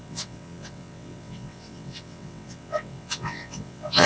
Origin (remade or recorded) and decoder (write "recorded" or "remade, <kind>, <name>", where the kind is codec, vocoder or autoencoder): remade, vocoder, WaveNeXt